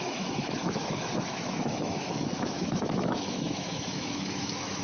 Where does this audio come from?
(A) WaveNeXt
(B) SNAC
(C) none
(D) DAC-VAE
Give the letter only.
D